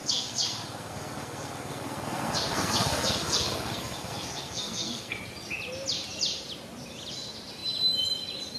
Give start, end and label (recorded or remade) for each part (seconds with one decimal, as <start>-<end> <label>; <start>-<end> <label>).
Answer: 0.0-5.2 remade; 5.2-8.6 recorded